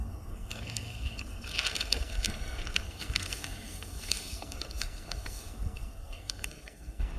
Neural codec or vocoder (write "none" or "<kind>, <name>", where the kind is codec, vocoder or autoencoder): codec, SNAC